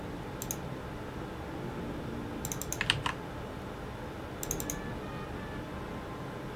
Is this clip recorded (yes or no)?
yes